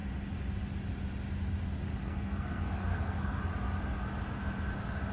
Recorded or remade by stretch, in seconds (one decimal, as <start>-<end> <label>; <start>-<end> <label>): 0.0-2.0 recorded; 2.0-3.4 remade; 3.4-5.1 recorded